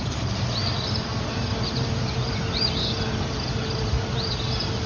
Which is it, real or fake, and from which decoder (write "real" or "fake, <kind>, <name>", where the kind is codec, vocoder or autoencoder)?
real